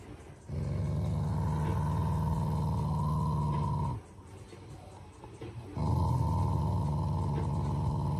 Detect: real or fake real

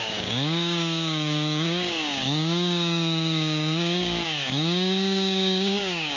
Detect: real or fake fake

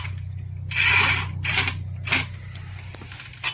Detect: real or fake real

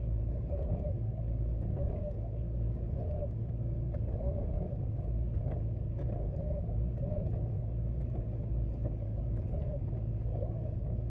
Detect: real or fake fake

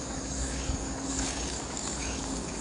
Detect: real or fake fake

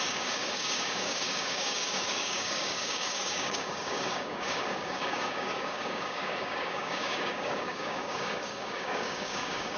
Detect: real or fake fake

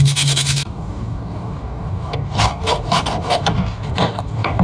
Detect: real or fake fake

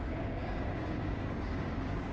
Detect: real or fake fake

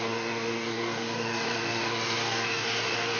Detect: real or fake fake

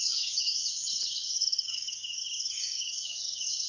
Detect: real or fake fake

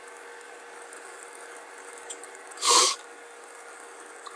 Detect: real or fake fake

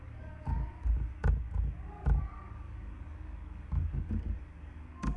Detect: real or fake fake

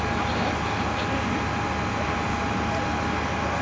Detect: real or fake real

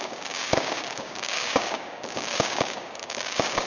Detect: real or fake fake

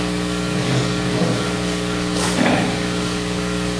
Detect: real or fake fake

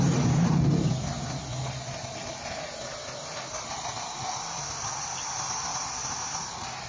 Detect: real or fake real